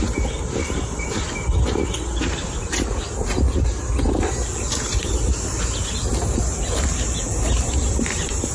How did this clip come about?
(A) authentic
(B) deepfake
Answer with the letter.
A